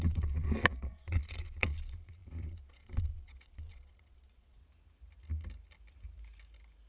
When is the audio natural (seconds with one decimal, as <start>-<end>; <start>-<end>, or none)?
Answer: 4.6-6.9

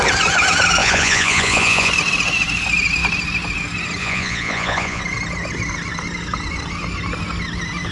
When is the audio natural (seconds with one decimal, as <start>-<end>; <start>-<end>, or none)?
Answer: 0.0-0.8; 1.9-4.0; 5.0-7.9

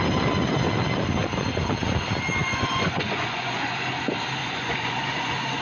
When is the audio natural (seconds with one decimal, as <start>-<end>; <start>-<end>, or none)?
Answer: 0.0-2.4; 3.9-4.4

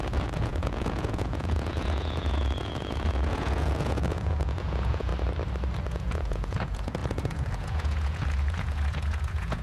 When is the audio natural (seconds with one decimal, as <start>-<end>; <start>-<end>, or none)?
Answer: 5.1-5.9

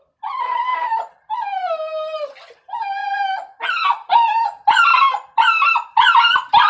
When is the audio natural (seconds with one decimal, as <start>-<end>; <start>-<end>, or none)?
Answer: 0.0-6.7

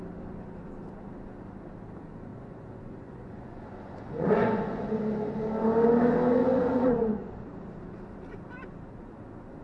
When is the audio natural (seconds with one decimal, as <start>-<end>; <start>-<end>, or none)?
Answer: 0.0-2.3; 5.0-6.4; 7.4-9.6

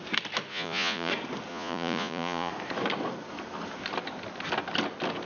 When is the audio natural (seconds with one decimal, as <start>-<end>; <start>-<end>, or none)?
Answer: 0.0-0.5; 1.1-1.5; 2.5-5.2